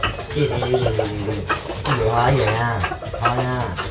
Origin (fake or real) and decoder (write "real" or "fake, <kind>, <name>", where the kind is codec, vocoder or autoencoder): real